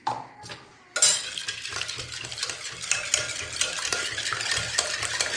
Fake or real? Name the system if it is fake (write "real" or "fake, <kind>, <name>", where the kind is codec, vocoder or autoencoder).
real